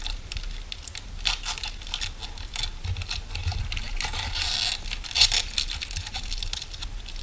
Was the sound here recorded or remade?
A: recorded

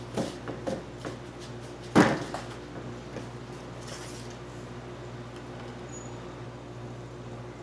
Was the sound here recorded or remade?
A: recorded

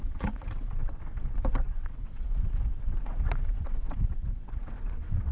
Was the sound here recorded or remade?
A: remade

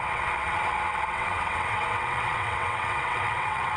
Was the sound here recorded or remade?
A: remade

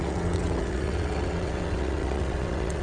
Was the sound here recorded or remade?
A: remade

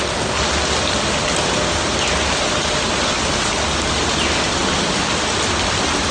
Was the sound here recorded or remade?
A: recorded